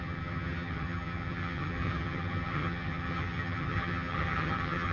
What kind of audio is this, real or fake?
fake